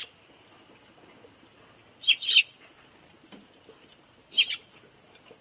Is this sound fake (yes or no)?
no